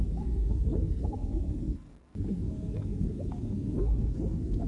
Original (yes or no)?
no